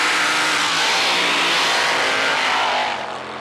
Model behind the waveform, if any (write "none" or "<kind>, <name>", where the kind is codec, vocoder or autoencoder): none